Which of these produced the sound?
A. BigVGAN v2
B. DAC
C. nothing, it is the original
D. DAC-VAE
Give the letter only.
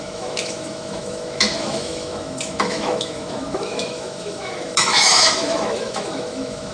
D